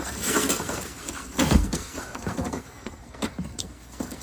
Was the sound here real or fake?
fake